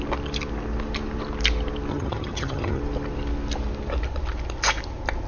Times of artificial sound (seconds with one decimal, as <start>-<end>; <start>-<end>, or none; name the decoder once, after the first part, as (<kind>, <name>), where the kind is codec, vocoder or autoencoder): 1.9-2.8 (vocoder, HiFi-GAN)